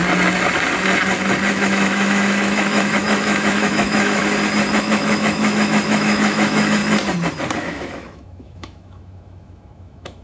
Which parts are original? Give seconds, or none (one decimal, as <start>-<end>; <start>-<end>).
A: 0.0-1.5; 4.2-4.8; 6.8-7.6